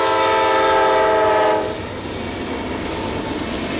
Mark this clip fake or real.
real